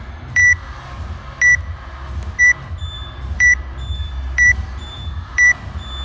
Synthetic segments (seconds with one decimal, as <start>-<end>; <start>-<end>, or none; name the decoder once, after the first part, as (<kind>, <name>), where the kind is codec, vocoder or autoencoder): 0.0-0.4 (vocoder, BigVGAN v2); 2.4-6.0